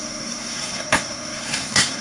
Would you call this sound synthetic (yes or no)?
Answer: yes